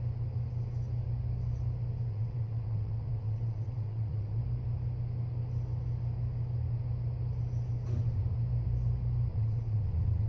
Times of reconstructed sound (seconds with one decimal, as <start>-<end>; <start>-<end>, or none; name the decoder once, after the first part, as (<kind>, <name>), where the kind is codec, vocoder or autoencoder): 2.1-4.4 (vocoder, WaveNeXt); 9.3-10.3